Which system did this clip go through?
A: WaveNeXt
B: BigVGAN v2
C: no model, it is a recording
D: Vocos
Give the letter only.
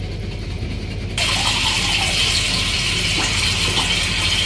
C